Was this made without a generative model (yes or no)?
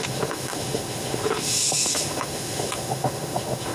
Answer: no